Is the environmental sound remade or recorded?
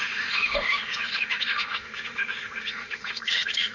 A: remade